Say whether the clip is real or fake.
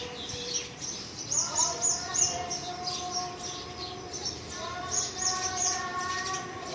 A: real